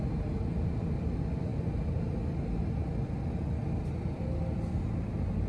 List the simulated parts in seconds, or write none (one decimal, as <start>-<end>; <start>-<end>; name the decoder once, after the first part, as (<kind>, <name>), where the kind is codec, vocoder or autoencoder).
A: none

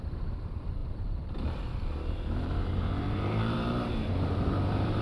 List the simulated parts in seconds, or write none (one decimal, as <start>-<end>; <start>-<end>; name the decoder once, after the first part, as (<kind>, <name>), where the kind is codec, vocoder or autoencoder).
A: 0.0-5.0 (vocoder, BigVGAN v2)

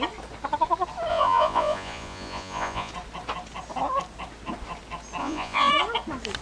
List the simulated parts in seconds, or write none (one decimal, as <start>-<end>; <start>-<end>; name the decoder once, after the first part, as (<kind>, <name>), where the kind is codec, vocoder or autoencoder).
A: 1.1-2.9 (vocoder, Vocos); 5.2-5.7

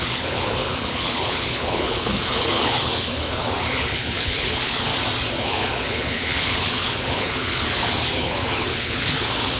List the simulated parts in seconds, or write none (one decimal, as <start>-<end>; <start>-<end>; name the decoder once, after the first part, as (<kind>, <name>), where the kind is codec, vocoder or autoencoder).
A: 0.0-4.9 (codec, HILCodec); 5.4-9.6

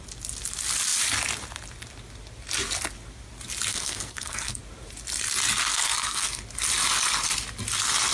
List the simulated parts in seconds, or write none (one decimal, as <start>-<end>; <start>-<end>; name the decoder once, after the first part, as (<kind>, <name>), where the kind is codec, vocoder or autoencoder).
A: 3.7-4.6 (codec, SNAC); 5.7-6.4

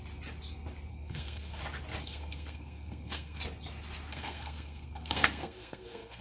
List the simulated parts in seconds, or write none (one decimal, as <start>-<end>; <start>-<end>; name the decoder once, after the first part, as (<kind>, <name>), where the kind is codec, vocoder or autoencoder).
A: 0.9-1.6 (codec, SNAC); 2.0-3.4; 4.1-6.2

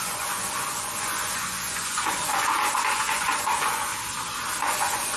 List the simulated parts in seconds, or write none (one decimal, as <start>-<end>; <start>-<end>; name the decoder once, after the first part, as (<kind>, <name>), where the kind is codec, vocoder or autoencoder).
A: 0.0-3.9 (vocoder, Vocos); 4.6-5.2